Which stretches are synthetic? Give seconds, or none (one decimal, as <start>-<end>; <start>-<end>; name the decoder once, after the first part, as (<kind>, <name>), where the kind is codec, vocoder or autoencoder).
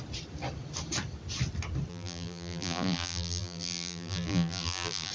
1.9-5.1 (vocoder, BigVGAN v2)